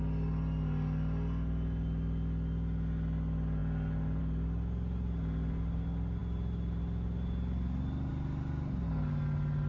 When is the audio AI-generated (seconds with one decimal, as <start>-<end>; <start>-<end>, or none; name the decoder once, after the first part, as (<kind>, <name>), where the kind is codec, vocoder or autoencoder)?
none